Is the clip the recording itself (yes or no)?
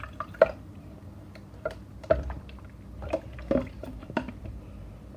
yes